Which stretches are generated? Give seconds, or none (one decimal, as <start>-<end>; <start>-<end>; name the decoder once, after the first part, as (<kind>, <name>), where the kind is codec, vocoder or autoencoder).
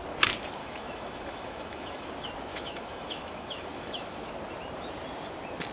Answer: 0.6-2.1 (autoencoder, DAC-VAE); 2.5-4.3